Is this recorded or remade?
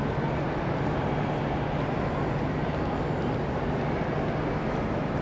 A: recorded